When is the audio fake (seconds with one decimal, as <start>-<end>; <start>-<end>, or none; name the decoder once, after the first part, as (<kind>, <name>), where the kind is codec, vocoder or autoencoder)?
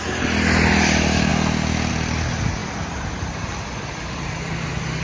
2.6-4.3 (vocoder, BigVGAN v2)